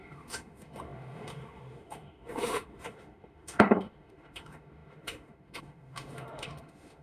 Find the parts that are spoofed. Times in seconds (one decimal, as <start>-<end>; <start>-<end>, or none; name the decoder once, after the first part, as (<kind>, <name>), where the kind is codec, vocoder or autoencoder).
0.0-7.0 (autoencoder, DAC-VAE)